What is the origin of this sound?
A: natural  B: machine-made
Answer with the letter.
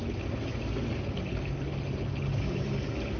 A